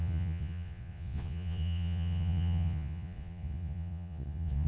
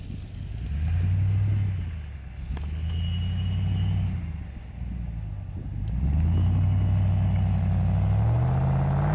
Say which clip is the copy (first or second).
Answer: first